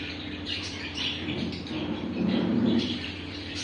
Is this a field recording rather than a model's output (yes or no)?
no